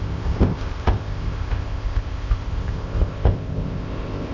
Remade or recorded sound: remade